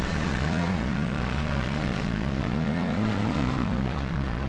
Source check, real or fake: fake